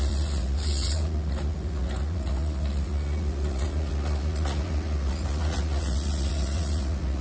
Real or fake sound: fake